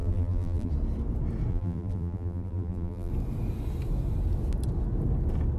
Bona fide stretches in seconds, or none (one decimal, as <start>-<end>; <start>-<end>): 0.7-1.5; 3.1-5.6